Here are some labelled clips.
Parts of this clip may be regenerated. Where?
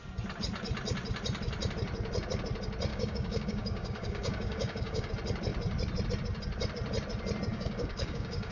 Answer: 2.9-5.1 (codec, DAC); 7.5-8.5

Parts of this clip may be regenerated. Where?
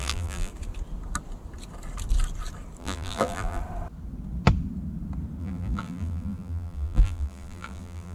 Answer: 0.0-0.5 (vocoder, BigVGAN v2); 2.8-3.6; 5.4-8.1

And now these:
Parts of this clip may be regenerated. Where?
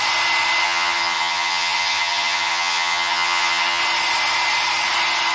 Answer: 0.6-3.8 (vocoder, HiFi-GAN)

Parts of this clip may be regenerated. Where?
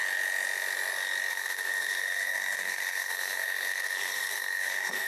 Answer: 1.3-5.1 (codec, SNAC)